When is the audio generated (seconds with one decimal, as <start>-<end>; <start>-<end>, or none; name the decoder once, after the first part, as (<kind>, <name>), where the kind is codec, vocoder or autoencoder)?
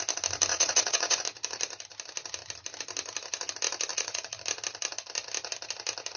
0.5-1.2 (vocoder, Vocos); 3.9-4.4